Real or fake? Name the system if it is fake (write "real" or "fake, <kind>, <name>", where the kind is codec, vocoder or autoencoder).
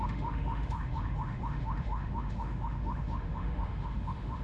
fake, autoencoder, DAC-VAE